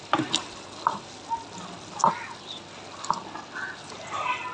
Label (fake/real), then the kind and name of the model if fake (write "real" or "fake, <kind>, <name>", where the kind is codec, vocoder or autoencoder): real